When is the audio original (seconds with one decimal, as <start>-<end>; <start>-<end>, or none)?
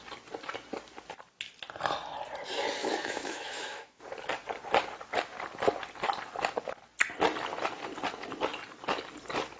0.0-2.8; 4.0-9.6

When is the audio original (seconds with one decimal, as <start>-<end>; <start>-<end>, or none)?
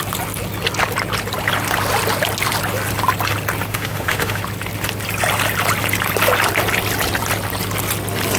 0.0-3.7; 4.4-8.4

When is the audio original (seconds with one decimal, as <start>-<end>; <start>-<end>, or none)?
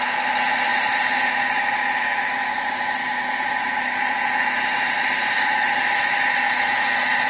0.0-3.0; 4.0-7.3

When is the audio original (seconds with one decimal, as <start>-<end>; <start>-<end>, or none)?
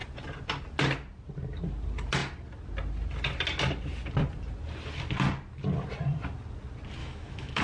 0.0-7.0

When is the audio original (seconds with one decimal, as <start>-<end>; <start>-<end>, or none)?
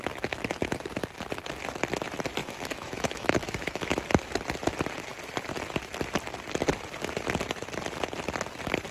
0.0-2.4; 4.0-8.9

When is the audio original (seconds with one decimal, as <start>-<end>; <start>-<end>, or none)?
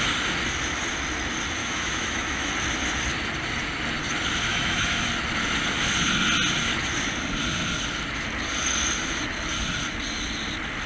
0.0-1.6; 2.5-4.5; 5.1-10.9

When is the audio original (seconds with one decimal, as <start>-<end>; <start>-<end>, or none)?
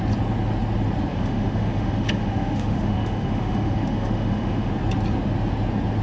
0.0-1.1; 4.7-6.0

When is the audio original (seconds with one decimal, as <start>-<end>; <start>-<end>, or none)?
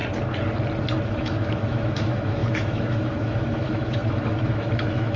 0.0-1.1